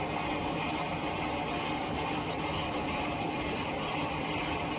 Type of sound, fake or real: real